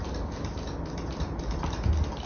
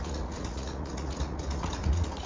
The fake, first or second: second